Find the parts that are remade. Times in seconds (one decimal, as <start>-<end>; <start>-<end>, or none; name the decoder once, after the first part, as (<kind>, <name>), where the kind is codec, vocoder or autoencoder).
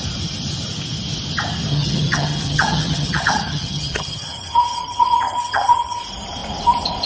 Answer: 1.7-6.0 (vocoder, HiFi-GAN)